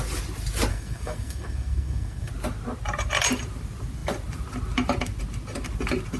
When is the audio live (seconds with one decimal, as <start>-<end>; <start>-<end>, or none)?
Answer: 0.0-0.7; 2.3-6.2